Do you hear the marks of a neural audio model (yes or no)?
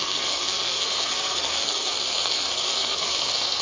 yes